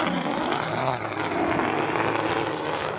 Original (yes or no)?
yes